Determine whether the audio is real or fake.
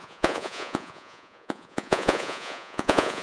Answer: fake